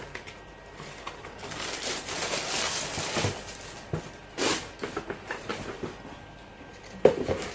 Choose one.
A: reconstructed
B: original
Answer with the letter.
B